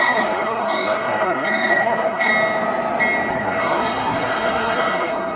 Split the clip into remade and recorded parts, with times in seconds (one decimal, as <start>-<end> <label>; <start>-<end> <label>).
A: 0.0-2.3 remade; 2.3-3.3 recorded; 3.3-5.4 remade